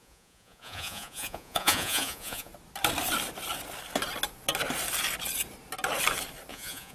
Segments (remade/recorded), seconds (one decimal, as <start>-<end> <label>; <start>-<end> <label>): 0.0-2.5 remade; 2.5-6.5 recorded; 6.5-6.9 remade